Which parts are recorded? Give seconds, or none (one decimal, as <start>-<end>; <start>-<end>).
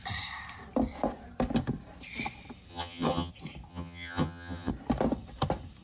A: 0.0-2.7; 3.3-3.7; 4.7-5.8